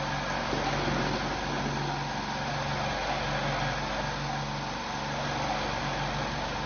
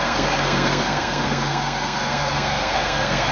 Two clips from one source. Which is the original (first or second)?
first